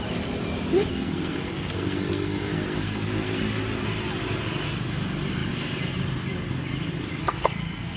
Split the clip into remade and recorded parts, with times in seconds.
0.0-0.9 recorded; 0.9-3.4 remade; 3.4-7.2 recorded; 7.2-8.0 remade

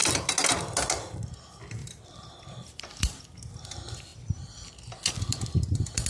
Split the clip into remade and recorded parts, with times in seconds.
0.0-1.8 recorded; 1.8-3.2 remade; 3.2-6.1 recorded

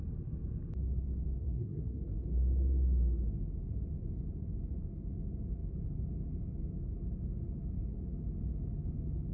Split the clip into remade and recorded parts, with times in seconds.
0.0-1.4 recorded; 1.4-2.0 remade; 2.0-9.3 recorded

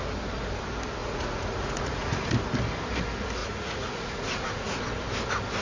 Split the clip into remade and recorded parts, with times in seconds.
0.0-1.0 recorded; 1.0-2.3 remade; 2.3-3.4 recorded; 3.4-4.8 remade; 4.8-5.6 recorded

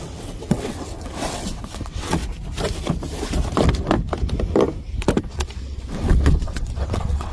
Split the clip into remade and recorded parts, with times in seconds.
0.0-2.2 remade; 2.2-5.2 recorded; 5.2-7.3 remade

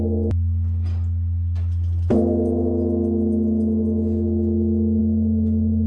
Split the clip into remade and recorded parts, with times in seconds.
0.0-5.9 recorded

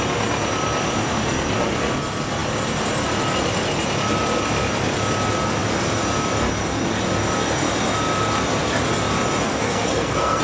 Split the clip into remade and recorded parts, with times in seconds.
0.0-9.5 recorded; 9.5-10.4 remade

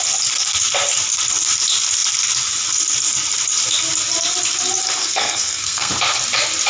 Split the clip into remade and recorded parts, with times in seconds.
0.0-5.0 recorded; 5.0-5.9 remade; 5.9-6.7 recorded